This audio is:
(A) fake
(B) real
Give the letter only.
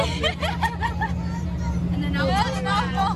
B